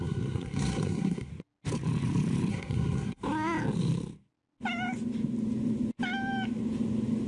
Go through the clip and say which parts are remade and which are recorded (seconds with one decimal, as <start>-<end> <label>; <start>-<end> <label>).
0.0-1.3 remade; 1.3-2.5 recorded; 2.5-3.2 remade; 3.2-7.3 recorded